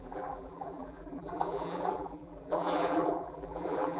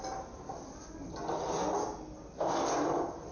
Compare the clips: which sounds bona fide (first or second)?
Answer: second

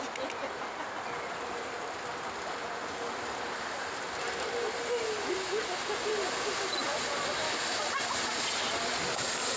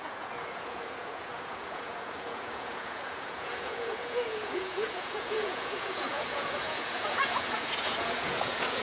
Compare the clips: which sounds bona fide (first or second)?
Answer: first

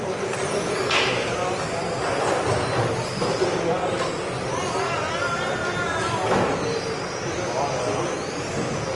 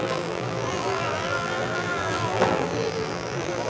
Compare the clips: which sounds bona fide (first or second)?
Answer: first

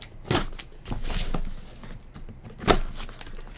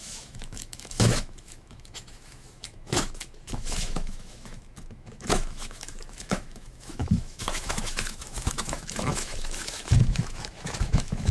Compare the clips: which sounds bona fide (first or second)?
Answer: first